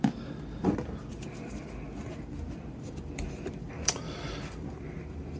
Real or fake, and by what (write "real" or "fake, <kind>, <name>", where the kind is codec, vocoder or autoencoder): fake, vocoder, BigVGAN v2